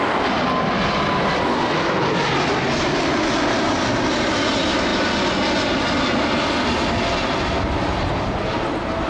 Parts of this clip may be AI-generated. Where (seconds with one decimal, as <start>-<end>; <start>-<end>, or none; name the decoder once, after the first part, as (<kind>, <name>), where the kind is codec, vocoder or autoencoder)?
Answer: none